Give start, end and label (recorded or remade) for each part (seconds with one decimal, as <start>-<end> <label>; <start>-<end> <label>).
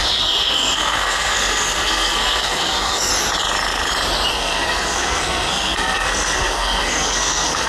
0.0-3.1 remade; 3.1-4.3 recorded; 4.3-7.7 remade